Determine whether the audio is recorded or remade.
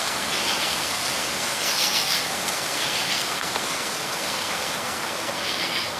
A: remade